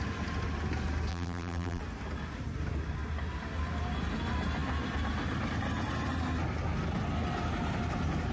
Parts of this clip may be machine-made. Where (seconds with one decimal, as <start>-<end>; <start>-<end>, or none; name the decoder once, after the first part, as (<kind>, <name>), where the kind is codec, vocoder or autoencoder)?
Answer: 1.1-1.8 (vocoder, BigVGAN v2)